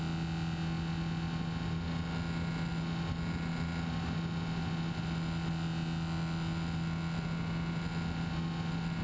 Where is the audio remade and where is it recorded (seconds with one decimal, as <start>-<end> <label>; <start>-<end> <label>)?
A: 0.0-9.0 recorded

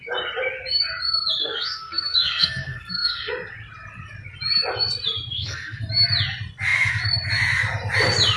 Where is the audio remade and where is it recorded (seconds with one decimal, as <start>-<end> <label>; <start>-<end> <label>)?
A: 0.0-1.4 recorded; 1.4-3.3 remade; 3.3-5.3 recorded; 5.3-5.8 remade; 5.8-8.4 recorded

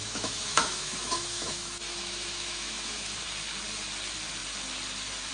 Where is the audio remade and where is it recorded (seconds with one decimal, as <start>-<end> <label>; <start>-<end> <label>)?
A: 0.0-3.2 remade; 3.2-5.3 recorded

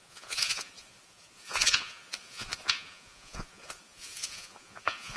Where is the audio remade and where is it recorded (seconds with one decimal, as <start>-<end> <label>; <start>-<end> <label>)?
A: 0.0-5.2 remade

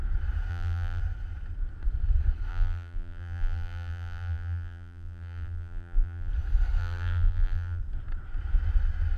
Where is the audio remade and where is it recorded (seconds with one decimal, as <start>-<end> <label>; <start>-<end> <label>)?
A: 0.0-0.5 recorded; 0.5-1.0 remade; 1.0-2.5 recorded; 2.5-6.3 remade; 6.3-6.8 recorded; 6.8-7.8 remade; 7.8-9.2 recorded